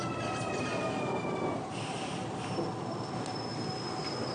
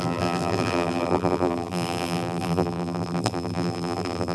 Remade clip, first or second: second